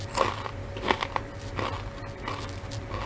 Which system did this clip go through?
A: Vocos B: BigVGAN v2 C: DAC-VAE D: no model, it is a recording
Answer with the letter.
D